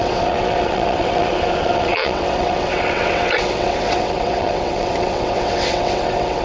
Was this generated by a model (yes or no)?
yes